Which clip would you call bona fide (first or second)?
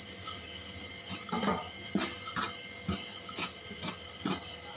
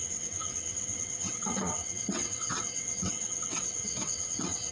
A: first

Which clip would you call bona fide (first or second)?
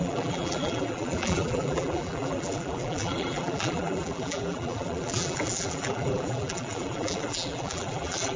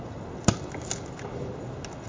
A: second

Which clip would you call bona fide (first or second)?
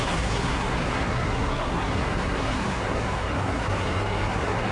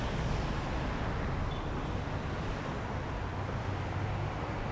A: second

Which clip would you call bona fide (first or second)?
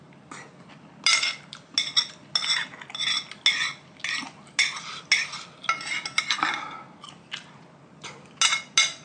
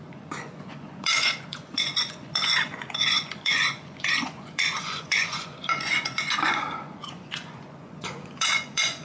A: first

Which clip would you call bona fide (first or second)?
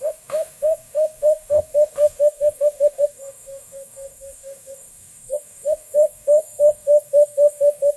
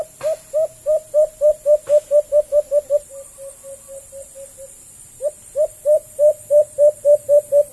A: second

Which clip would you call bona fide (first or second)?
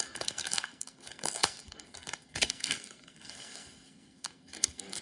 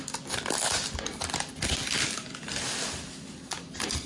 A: second